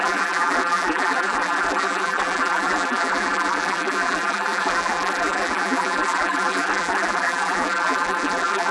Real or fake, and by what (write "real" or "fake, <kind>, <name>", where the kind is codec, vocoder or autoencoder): fake, vocoder, BigVGAN v2